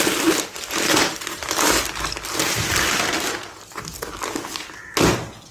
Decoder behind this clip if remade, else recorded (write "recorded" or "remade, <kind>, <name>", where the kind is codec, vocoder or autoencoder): recorded